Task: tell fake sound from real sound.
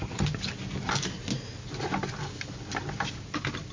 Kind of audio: real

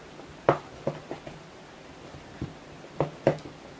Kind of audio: real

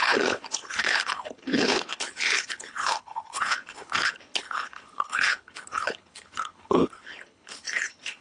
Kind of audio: fake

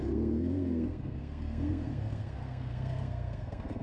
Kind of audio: fake